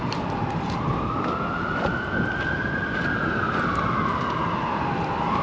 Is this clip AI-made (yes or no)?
no